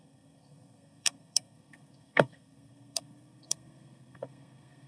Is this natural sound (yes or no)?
no